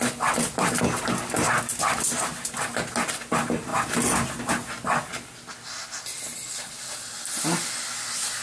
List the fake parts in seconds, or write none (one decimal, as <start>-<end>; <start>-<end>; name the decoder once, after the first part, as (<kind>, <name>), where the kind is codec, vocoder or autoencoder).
none